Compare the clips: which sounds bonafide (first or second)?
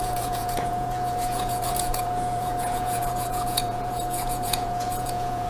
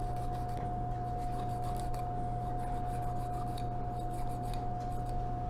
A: second